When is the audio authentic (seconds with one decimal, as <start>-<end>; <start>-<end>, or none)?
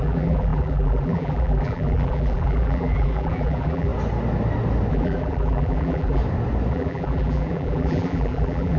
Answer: 3.9-4.9; 6.2-6.7